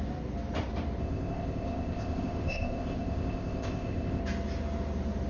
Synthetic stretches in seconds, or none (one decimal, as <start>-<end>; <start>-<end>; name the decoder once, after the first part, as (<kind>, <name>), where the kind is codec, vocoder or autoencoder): 1.0-4.2 (codec, ZipCodec)